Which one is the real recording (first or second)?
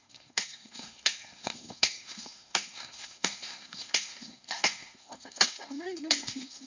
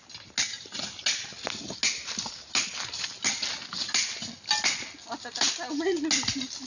second